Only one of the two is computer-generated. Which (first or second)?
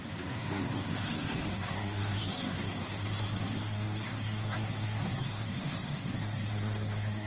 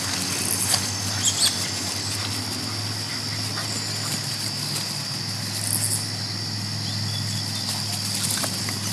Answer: first